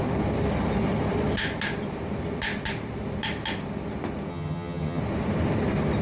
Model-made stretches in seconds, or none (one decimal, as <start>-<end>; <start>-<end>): 4.3-5.0